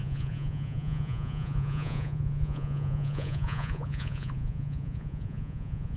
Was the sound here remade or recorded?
remade